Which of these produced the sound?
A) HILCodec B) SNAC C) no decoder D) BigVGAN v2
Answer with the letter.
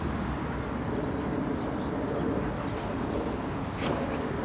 C